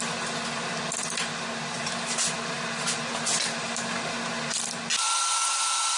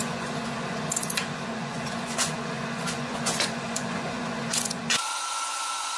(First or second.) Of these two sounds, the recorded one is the first